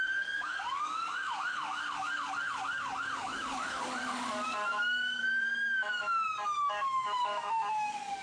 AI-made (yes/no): yes